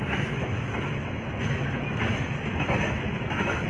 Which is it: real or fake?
fake